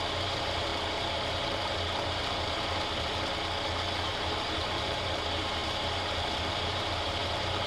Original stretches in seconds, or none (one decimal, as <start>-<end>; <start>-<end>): 2.2-4.1